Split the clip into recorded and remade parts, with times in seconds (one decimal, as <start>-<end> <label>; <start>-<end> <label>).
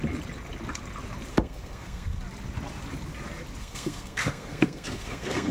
0.0-1.3 recorded; 1.3-2.2 remade; 2.2-3.6 recorded; 3.6-5.5 remade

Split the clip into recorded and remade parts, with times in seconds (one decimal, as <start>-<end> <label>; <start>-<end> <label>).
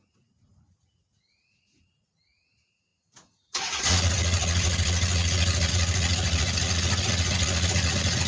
0.0-8.3 remade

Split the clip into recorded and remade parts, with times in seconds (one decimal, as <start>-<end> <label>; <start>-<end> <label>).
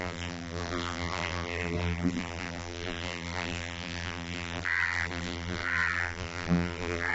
0.0-7.1 remade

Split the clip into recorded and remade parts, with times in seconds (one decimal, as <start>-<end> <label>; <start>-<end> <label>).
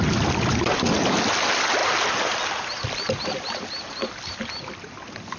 0.0-5.4 recorded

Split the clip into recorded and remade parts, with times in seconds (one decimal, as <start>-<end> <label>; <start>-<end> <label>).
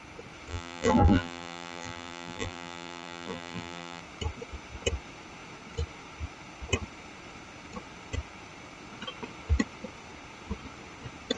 0.0-0.5 recorded; 0.5-4.0 remade; 4.0-11.4 recorded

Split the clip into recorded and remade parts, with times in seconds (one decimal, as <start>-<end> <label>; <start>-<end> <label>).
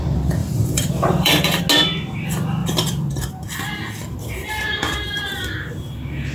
0.0-0.4 recorded; 0.4-1.6 remade; 1.6-2.6 recorded; 2.6-5.7 remade; 5.7-6.3 recorded